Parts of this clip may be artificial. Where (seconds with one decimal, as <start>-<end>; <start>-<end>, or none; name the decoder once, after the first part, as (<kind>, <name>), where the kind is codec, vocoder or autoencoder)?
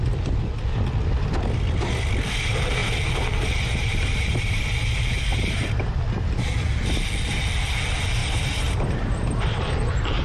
3.8-4.7 (vocoder, BigVGAN v2); 5.3-5.9; 8.2-10.2